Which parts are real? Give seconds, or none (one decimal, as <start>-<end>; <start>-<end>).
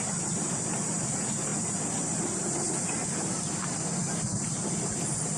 0.0-5.4